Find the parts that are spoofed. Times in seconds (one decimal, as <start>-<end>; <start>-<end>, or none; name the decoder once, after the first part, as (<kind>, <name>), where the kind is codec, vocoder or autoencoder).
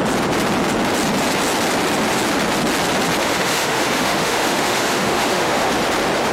3.2-5.7 (autoencoder, DAC-VAE)